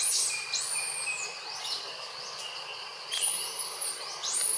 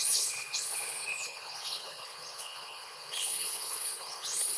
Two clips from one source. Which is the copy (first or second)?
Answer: second